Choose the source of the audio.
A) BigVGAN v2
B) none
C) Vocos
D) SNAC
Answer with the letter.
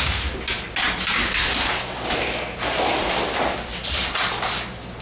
B